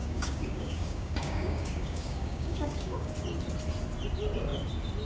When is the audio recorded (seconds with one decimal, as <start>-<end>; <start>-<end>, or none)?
3.1-5.1